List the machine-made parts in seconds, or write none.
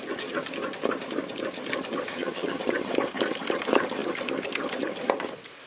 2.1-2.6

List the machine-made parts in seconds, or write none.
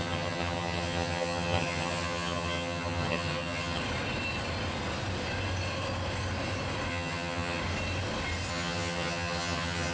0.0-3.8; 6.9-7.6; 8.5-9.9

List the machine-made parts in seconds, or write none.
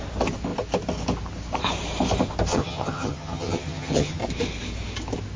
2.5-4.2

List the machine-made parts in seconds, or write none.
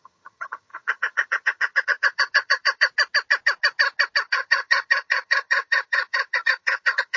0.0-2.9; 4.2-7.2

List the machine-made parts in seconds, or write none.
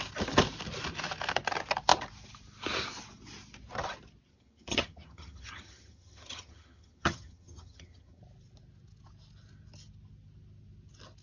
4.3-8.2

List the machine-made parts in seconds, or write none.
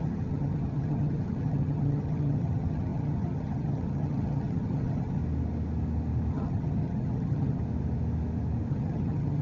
0.0-5.2; 6.3-7.6; 8.7-9.4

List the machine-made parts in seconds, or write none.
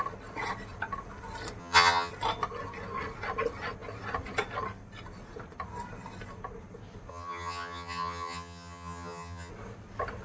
1.6-2.1; 7.1-9.5